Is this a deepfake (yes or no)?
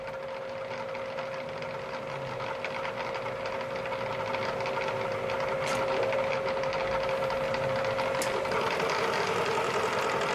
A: no